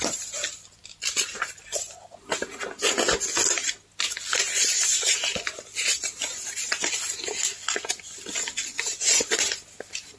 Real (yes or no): yes